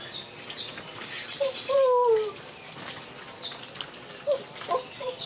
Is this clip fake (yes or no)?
no